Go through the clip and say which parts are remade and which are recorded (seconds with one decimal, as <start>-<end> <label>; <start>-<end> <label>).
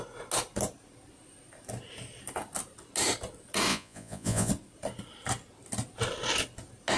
0.0-3.7 recorded; 3.7-4.5 remade; 4.5-7.0 recorded